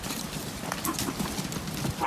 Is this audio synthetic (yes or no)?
no